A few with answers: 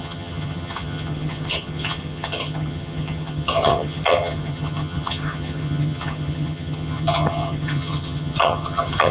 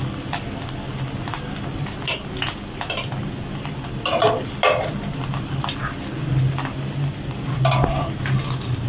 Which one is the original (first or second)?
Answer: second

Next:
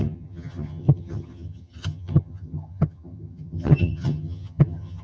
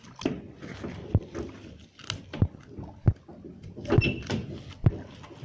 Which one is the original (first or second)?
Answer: second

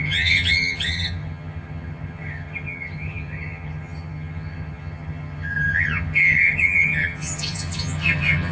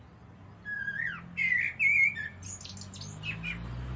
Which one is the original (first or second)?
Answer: second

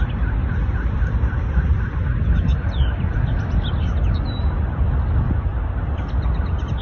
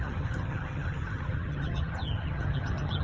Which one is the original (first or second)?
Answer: first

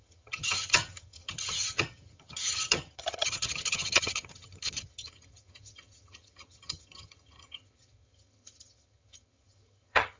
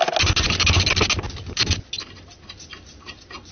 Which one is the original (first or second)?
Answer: second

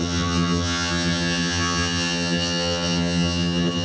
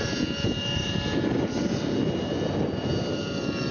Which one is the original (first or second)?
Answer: second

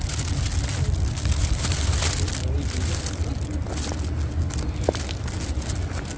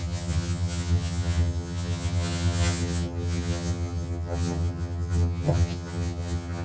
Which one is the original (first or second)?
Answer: first